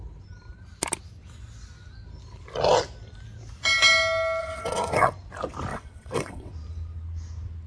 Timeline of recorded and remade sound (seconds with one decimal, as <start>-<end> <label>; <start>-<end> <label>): 0.0-4.4 recorded; 4.4-5.1 remade; 5.1-5.7 recorded; 5.7-6.5 remade; 6.5-7.7 recorded